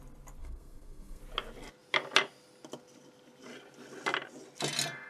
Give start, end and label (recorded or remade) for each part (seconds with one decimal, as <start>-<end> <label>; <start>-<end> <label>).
0.0-0.4 recorded; 0.4-1.2 remade; 1.2-5.1 recorded